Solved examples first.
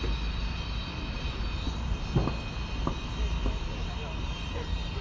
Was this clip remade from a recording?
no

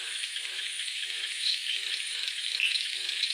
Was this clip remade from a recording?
yes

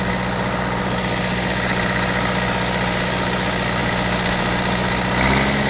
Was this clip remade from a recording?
no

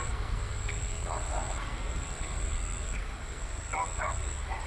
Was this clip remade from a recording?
yes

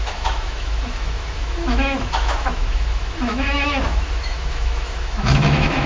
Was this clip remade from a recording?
yes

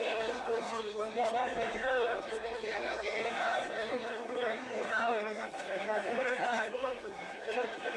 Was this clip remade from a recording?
yes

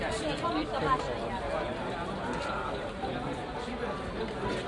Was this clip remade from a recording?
no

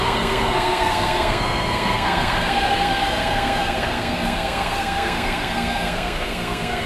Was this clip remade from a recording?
yes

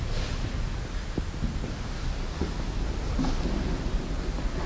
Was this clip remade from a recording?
no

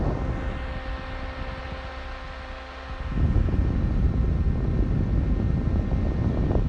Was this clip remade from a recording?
no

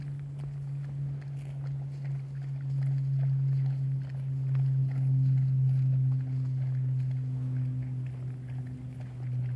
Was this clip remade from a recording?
no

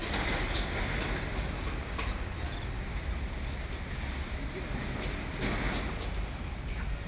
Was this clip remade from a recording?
no